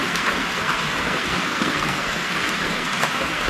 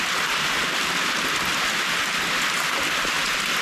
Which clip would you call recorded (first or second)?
second